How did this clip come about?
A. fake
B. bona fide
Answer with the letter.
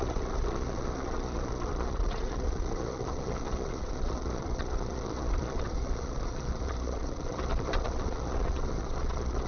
A